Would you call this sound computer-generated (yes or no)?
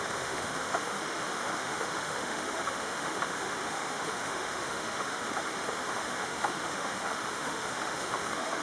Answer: yes